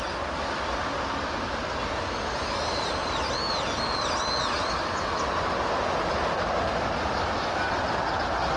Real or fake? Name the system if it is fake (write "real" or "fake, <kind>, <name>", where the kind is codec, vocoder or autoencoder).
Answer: real